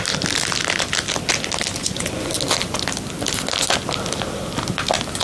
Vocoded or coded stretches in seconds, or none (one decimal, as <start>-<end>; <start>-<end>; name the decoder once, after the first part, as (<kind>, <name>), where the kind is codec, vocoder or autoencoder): 1.8-2.3 (vocoder, Vocos)